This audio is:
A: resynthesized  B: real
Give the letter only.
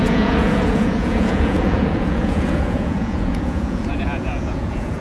A